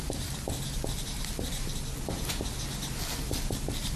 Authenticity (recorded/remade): recorded